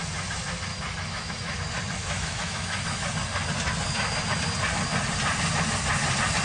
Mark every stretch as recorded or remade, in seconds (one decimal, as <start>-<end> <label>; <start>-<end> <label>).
0.0-0.7 recorded; 0.7-1.6 remade; 1.6-2.0 recorded; 2.0-3.1 remade; 3.1-6.4 recorded